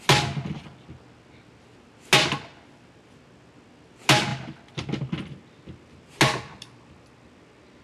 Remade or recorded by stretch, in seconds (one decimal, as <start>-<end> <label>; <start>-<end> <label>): 0.0-7.8 recorded

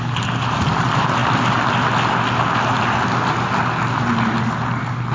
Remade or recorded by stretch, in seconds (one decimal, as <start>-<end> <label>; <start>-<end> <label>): 0.0-5.1 remade

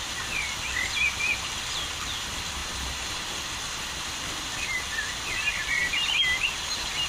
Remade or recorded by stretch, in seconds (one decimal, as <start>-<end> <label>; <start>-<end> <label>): 0.0-2.6 recorded; 2.6-3.3 remade; 3.3-7.1 recorded

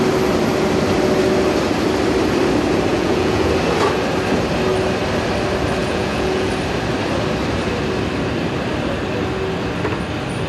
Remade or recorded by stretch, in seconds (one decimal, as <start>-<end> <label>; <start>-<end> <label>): 0.0-2.9 recorded; 2.9-3.5 remade; 3.5-5.8 recorded; 5.8-6.5 remade; 6.5-10.5 recorded

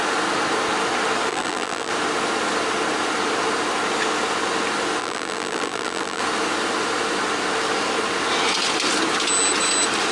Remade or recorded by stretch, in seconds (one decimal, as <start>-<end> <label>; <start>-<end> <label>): 0.0-1.3 recorded; 1.3-1.9 remade; 1.9-5.0 recorded; 5.0-6.2 remade; 6.2-10.1 recorded